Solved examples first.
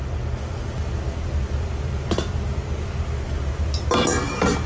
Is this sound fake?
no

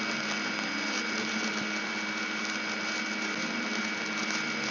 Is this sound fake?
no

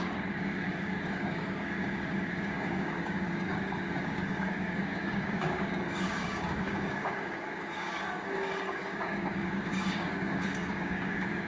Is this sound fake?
yes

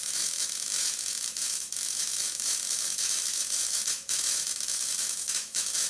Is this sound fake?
yes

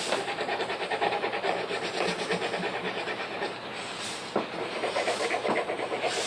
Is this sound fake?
yes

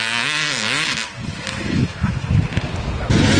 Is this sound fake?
no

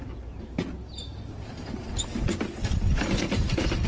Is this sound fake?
no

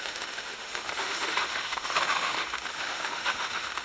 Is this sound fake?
yes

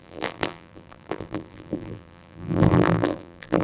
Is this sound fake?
yes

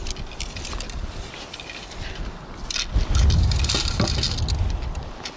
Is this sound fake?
no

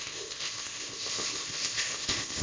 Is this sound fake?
yes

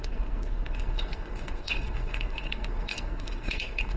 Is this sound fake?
yes